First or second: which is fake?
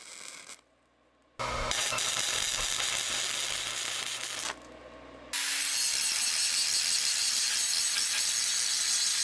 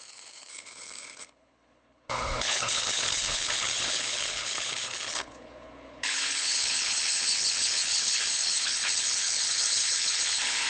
second